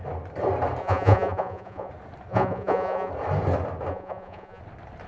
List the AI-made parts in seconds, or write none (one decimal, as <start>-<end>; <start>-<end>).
0.8-1.9; 2.3-3.1; 3.9-4.6